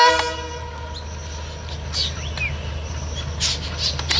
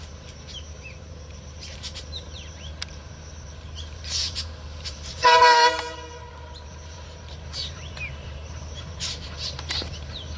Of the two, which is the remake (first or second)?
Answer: second